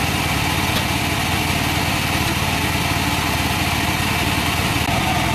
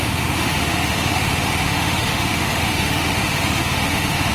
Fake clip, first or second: second